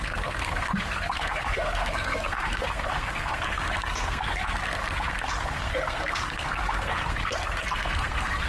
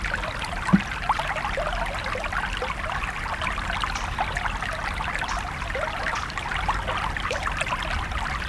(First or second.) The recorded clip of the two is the second